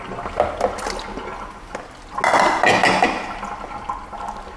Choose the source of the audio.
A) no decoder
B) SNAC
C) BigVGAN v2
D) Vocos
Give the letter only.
A